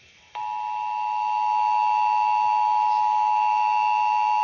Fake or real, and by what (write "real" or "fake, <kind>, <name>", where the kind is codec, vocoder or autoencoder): real